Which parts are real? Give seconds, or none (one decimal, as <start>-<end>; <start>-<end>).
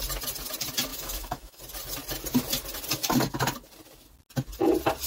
0.0-0.9; 1.6-5.1